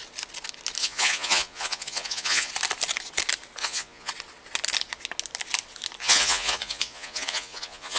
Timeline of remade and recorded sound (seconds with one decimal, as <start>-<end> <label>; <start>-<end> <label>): 0.0-0.8 recorded; 0.8-2.5 remade; 2.5-3.6 recorded; 3.6-4.1 remade; 4.1-6.0 recorded; 6.0-8.0 remade